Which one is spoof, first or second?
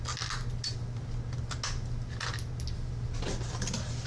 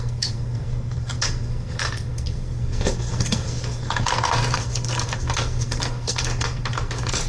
second